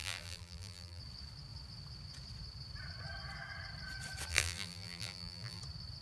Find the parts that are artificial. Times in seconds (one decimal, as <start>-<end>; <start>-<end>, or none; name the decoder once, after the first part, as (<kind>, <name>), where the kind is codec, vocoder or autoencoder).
0.0-1.0 (vocoder, BigVGAN v2); 4.3-5.6